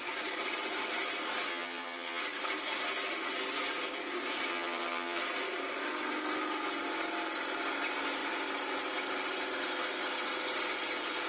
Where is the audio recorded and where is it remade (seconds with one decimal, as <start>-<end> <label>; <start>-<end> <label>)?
0.0-1.5 recorded; 1.5-2.2 remade; 2.2-4.5 recorded; 4.5-5.2 remade; 5.2-11.3 recorded